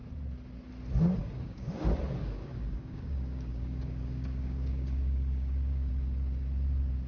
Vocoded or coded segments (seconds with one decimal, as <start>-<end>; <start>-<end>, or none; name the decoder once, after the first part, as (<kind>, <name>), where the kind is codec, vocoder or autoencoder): 1.2-1.8 (codec, DAC); 2.2-5.9